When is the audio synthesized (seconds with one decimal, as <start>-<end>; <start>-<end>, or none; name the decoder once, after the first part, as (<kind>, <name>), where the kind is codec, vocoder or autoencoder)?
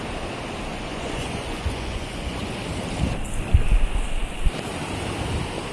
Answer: 0.7-2.6 (vocoder, Vocos)